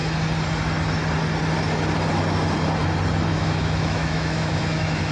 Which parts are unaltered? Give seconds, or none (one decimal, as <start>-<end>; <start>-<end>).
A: 0.0-3.3